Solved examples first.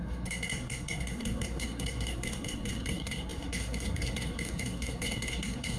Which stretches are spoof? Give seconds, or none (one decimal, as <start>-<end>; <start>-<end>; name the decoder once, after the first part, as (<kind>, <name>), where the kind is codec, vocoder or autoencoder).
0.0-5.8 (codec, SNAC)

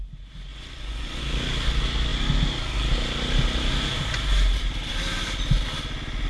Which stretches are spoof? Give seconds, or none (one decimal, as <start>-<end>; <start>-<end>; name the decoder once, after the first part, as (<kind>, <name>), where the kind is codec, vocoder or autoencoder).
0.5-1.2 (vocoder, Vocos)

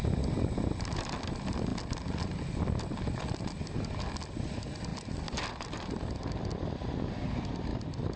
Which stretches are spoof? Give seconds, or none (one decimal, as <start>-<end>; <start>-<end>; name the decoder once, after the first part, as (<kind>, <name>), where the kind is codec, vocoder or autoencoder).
7.7-8.2 (vocoder, BigVGAN v2)